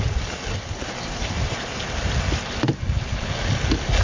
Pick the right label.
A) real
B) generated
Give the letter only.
A